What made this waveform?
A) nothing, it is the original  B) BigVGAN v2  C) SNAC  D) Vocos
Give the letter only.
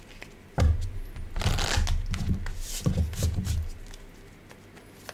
A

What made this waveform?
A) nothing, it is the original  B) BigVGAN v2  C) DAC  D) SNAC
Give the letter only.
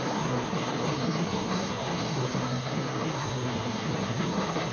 D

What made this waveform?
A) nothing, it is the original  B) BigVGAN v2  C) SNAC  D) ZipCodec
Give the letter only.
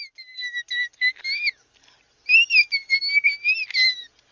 A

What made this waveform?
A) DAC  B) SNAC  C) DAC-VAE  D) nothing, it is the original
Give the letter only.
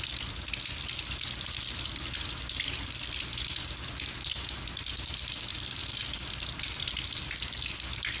D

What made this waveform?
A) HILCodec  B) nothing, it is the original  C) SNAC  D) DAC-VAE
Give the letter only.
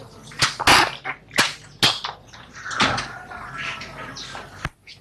B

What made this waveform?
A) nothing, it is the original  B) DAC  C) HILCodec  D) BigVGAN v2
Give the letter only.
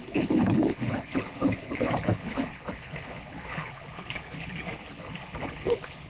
C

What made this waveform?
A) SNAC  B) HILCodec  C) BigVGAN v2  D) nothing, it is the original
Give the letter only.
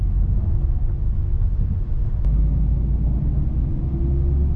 D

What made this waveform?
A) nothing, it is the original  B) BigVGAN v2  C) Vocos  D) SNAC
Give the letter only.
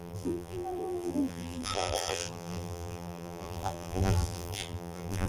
B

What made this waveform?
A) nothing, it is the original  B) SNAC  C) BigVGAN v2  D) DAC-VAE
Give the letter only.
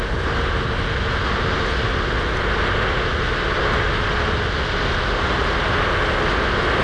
A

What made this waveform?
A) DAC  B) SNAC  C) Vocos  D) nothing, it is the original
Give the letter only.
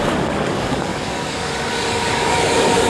A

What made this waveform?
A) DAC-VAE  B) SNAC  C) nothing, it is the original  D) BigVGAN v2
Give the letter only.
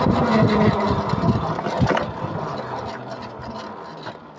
C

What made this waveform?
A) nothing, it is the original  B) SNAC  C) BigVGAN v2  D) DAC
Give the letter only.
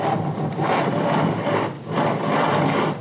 A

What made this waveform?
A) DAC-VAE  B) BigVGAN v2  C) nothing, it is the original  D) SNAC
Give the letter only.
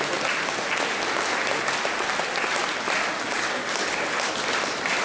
C